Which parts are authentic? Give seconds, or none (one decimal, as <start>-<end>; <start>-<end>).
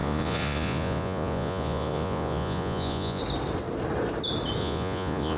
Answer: 3.2-4.6